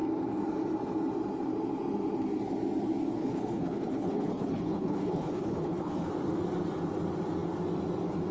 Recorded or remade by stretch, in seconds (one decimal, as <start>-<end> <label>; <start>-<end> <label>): 0.0-3.2 recorded; 3.2-6.1 remade; 6.1-8.3 recorded